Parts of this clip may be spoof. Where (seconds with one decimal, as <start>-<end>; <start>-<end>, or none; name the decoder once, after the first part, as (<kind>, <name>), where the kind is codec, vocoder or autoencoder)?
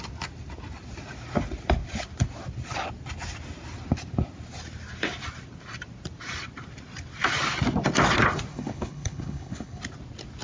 8.5-9.8 (codec, HILCodec)